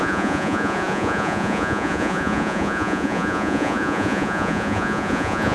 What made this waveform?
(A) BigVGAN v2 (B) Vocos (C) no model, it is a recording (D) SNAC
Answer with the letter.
B